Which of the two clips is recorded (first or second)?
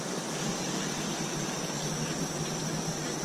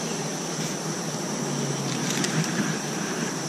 first